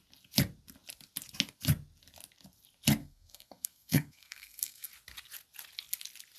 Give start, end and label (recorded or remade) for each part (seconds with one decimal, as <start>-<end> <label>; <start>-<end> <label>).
0.0-3.0 recorded; 3.0-4.9 remade; 4.9-6.4 recorded